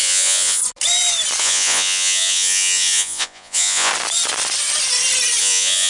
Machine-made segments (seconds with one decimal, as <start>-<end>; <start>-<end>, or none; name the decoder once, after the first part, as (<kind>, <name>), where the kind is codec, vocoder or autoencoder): 0.0-0.6 (vocoder, Vocos); 1.4-3.9; 5.4-5.9